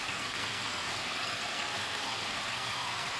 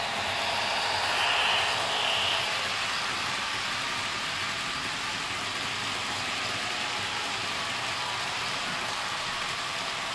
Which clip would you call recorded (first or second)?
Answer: second